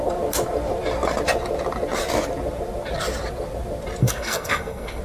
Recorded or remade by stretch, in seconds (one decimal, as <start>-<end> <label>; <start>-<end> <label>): 0.0-4.0 recorded; 4.0-5.0 remade